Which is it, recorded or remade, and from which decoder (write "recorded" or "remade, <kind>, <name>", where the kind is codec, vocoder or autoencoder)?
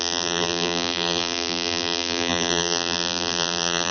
remade, vocoder, BigVGAN v2